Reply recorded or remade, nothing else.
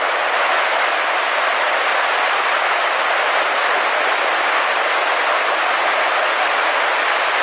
recorded